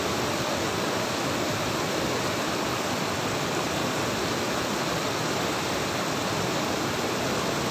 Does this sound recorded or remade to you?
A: recorded